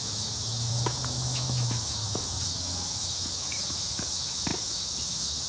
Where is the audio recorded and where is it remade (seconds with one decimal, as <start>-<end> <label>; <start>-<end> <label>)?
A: 0.0-5.5 remade